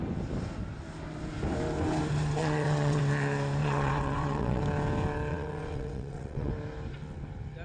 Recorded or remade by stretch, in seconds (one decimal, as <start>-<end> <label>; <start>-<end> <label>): 0.0-2.4 recorded; 2.4-3.0 remade; 3.0-3.6 recorded; 3.6-4.6 remade; 4.6-5.3 recorded; 5.3-6.5 remade; 6.5-7.6 recorded